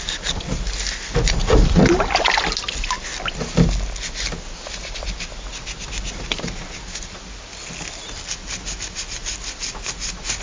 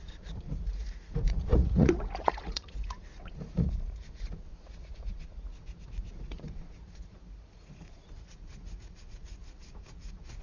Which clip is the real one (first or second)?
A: first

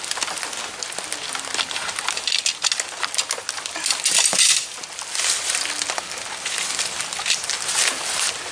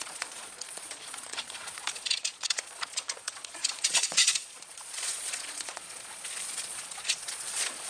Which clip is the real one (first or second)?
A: first